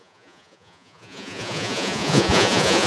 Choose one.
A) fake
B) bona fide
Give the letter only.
A